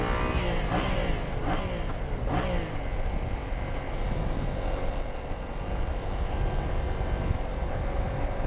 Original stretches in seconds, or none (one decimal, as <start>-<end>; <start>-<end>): 0.0-8.5